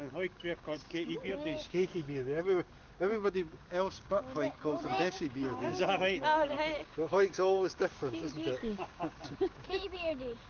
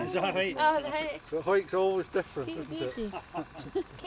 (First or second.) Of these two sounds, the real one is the second